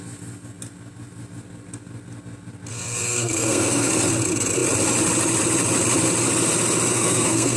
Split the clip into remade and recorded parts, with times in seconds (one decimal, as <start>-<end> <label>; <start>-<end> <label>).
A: 0.0-2.7 recorded; 2.7-3.9 remade; 3.9-6.9 recorded; 6.9-7.6 remade